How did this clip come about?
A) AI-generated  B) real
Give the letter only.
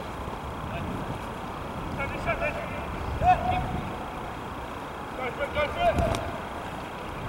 B